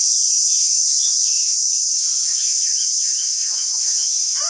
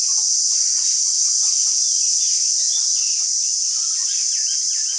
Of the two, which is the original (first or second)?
second